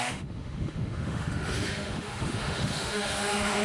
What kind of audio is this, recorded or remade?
remade